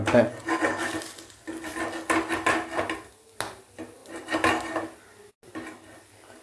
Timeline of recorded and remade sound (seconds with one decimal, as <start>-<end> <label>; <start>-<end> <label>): 0.0-6.4 recorded